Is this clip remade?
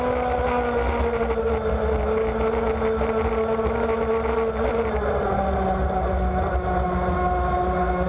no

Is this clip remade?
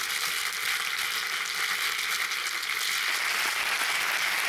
no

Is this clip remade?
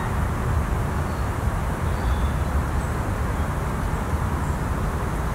no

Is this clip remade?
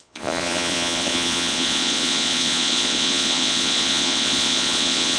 yes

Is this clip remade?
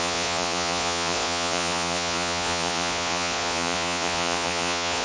yes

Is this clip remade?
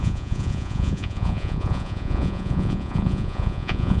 yes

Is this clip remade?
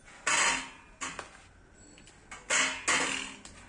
no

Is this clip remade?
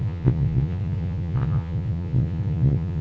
yes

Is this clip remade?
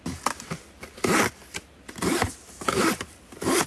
no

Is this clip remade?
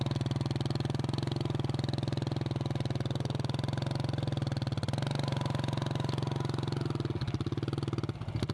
no